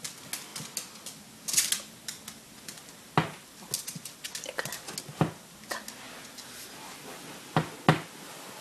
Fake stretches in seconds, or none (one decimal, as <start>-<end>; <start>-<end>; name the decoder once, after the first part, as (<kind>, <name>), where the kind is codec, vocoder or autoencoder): none